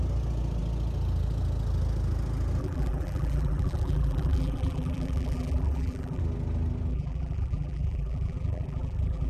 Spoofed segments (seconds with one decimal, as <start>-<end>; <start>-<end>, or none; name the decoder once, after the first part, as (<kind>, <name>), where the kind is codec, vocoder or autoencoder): 2.6-6.2 (vocoder, BigVGAN v2); 6.9-9.3